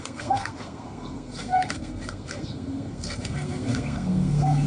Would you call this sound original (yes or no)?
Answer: no